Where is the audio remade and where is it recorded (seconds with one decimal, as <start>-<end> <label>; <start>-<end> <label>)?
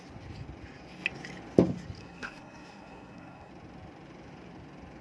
0.0-2.0 recorded; 2.0-3.5 remade; 3.5-5.0 recorded